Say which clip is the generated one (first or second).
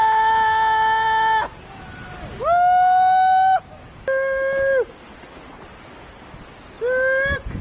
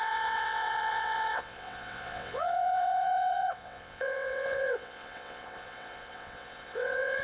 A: second